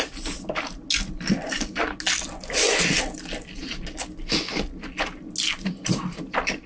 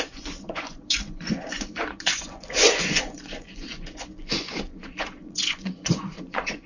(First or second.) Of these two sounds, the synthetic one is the second